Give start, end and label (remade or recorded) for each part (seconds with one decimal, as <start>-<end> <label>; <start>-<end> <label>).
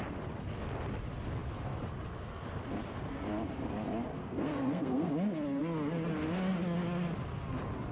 0.0-4.2 recorded; 4.2-5.1 remade; 5.1-7.9 recorded